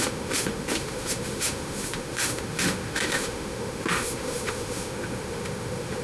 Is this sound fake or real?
fake